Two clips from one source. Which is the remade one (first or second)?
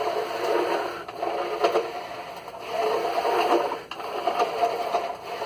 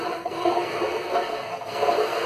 second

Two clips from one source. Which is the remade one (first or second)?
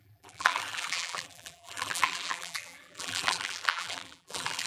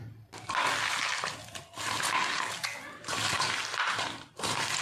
first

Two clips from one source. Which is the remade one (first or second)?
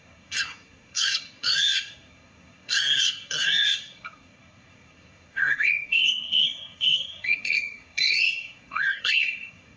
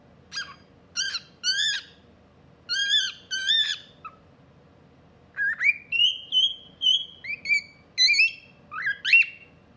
first